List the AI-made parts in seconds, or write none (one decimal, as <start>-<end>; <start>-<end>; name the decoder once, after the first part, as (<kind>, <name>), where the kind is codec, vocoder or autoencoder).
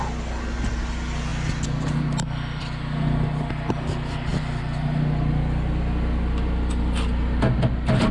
none